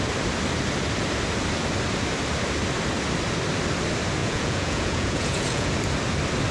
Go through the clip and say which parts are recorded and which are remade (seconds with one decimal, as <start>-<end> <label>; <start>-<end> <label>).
0.0-4.2 recorded; 4.2-5.7 remade; 5.7-6.5 recorded

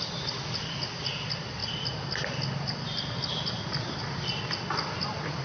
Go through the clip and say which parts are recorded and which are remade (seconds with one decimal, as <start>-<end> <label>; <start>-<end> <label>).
0.0-5.4 recorded

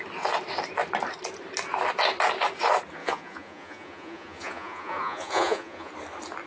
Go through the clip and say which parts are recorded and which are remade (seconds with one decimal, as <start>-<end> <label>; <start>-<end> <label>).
0.0-3.0 recorded; 3.0-5.9 remade; 5.9-6.5 recorded

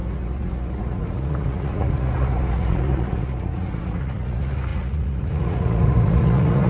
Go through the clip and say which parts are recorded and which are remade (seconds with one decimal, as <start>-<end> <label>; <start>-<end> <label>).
0.0-6.7 remade